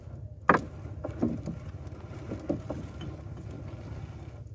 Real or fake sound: real